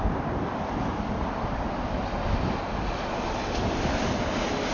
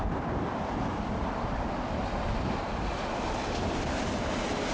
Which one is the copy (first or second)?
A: second